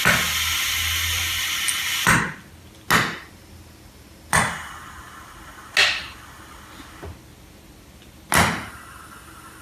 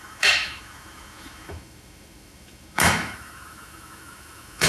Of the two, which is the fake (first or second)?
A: second